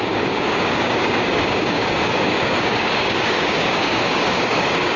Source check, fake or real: fake